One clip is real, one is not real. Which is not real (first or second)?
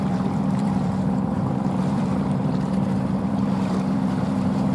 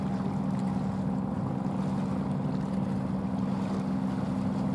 first